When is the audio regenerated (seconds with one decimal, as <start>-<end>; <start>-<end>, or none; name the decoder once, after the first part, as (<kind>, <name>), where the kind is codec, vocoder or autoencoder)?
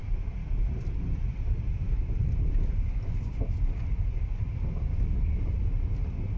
0.0-3.8 (vocoder, BigVGAN v2)